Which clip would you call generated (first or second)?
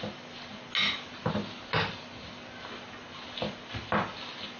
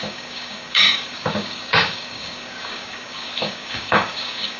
second